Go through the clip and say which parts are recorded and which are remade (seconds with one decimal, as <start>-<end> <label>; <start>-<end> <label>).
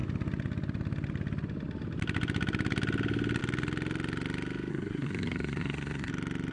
0.0-4.7 recorded; 4.7-6.1 remade; 6.1-6.5 recorded